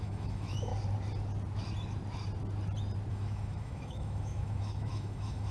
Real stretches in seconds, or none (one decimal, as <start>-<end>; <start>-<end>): 0.7-3.1